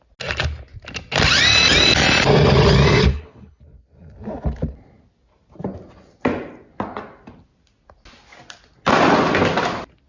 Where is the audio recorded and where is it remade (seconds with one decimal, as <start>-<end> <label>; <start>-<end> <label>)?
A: 0.0-3.1 recorded; 3.1-3.6 remade; 3.6-10.1 recorded